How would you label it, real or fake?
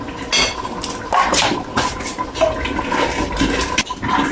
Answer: real